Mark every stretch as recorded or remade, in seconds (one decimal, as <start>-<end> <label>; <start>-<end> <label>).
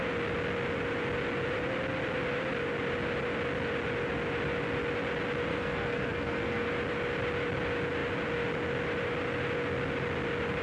0.0-5.5 recorded; 5.5-6.7 remade; 6.7-10.6 recorded